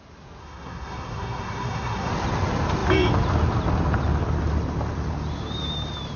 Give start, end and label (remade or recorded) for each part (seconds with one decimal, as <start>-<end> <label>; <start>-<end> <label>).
0.0-0.4 recorded; 0.4-2.1 remade; 2.1-6.2 recorded